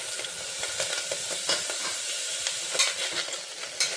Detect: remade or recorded recorded